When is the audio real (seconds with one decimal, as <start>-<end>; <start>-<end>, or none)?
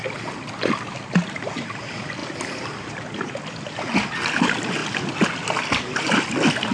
0.6-2.2; 2.7-6.7